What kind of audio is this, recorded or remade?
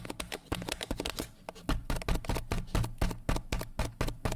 recorded